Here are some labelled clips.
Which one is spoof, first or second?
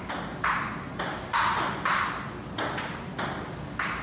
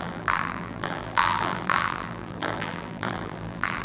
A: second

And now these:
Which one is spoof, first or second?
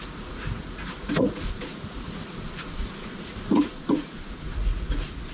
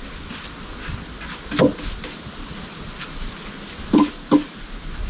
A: first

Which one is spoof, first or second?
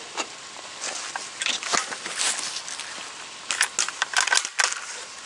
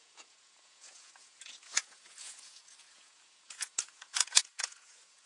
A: second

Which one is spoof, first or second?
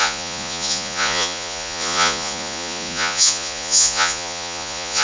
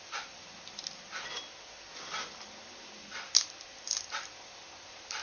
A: first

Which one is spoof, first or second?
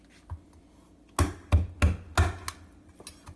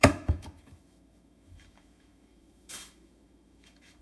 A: second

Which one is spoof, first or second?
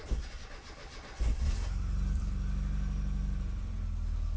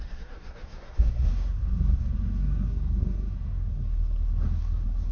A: second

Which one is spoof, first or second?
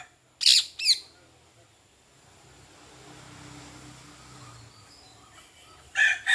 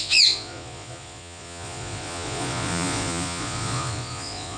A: second